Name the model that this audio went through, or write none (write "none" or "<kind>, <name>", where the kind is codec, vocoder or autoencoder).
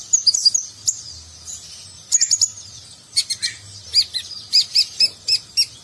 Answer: none